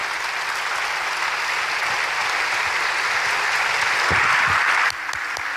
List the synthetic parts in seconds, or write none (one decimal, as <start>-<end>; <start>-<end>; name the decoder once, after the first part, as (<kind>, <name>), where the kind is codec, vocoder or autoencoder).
none